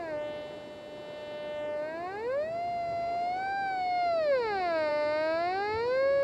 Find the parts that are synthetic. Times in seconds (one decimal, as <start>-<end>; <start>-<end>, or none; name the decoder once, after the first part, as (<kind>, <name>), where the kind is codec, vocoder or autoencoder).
none